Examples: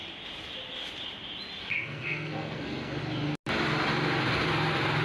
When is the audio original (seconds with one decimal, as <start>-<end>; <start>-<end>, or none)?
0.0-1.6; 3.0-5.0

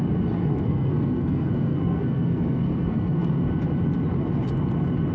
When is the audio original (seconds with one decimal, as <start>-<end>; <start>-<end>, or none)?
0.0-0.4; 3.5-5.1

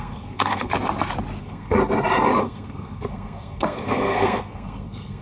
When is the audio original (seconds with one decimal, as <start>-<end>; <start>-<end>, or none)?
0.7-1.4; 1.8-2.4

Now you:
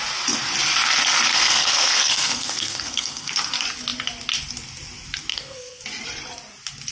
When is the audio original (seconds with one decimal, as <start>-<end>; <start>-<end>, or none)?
0.0-1.3; 3.3-5.3; 5.8-6.9

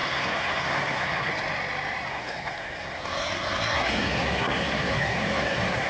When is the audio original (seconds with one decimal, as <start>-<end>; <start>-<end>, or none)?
1.3-2.1